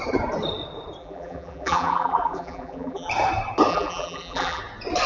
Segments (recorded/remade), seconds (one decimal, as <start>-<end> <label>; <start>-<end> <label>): 0.0-1.0 recorded; 1.0-3.1 remade; 3.1-3.7 recorded; 3.7-4.6 remade; 4.6-5.1 recorded